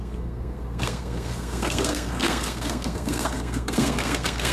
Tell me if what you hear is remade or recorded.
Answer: remade